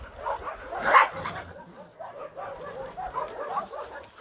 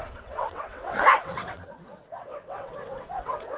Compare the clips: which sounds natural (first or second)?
first